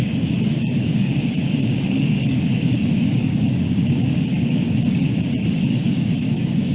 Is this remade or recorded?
remade